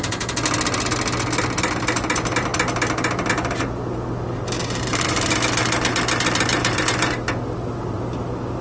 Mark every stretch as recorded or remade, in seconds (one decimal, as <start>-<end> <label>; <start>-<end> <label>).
0.0-4.6 recorded; 4.6-5.3 remade; 5.3-8.6 recorded